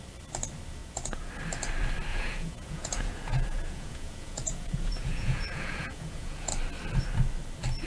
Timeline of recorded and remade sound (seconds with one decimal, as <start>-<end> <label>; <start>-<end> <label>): 0.0-0.8 recorded; 0.8-1.3 remade; 1.3-2.1 recorded; 2.1-6.5 remade; 6.5-7.9 recorded